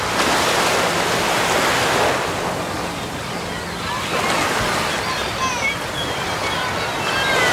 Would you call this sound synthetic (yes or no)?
no